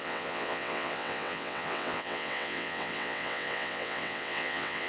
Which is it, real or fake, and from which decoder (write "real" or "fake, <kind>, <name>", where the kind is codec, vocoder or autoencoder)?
fake, vocoder, WaveNeXt